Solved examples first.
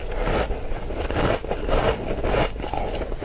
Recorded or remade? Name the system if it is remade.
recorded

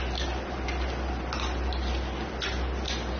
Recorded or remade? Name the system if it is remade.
recorded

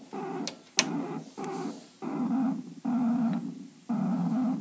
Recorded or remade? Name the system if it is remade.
recorded